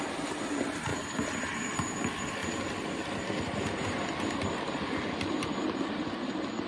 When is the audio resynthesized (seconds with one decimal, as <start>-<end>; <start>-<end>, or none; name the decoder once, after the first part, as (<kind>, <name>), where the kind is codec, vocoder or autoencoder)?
0.9-1.9 (vocoder, BigVGAN v2); 2.4-4.7